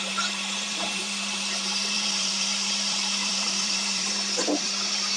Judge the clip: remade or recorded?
remade